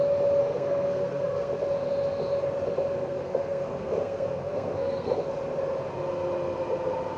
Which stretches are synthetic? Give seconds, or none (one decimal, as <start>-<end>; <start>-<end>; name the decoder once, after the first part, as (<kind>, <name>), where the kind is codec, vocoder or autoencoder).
0.4-1.5 (codec, SNAC); 3.0-5.2